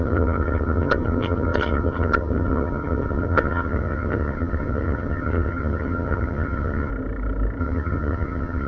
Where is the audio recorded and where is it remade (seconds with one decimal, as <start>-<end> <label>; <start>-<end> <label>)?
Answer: 0.0-6.9 remade; 6.9-7.6 recorded; 7.6-8.7 remade